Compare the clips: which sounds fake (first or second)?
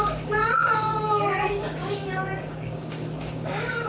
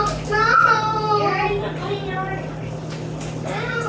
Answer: first